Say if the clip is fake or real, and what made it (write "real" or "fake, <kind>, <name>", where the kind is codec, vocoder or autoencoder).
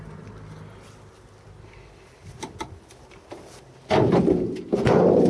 real